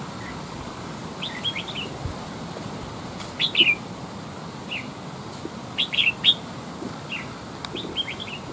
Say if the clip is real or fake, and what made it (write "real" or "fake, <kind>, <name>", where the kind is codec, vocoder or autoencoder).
real